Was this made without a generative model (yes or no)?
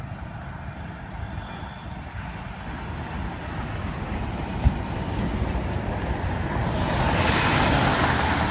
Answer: yes